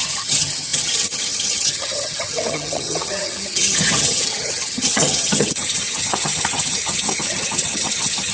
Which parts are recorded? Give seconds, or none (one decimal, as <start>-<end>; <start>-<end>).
none